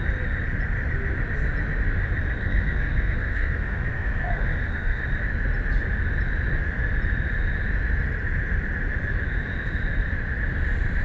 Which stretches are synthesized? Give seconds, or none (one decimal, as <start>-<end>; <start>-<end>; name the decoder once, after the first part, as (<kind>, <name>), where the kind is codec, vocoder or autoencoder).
2.4-5.0 (codec, SNAC)